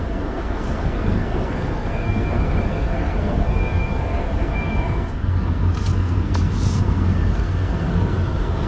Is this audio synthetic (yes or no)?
yes